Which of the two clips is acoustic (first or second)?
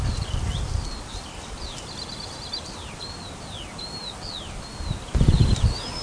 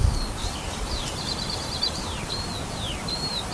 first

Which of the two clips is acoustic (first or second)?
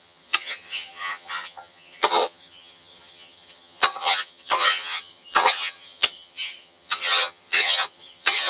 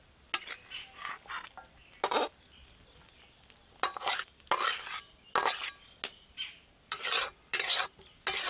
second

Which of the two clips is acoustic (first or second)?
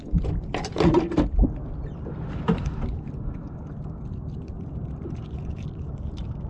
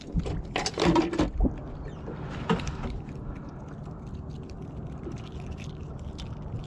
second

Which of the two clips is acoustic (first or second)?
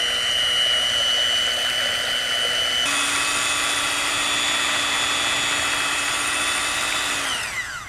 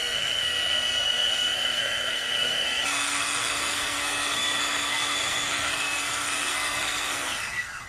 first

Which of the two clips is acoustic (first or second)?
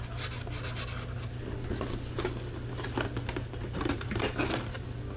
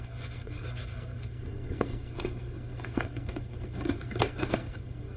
first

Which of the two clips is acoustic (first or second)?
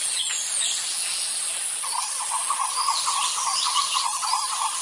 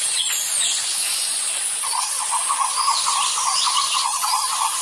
first